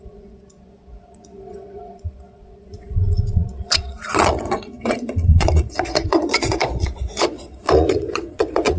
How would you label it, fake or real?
fake